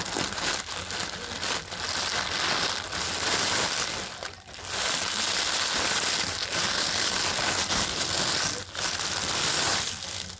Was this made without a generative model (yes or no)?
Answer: yes